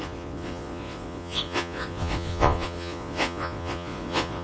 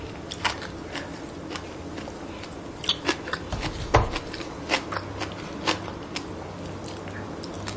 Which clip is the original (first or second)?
second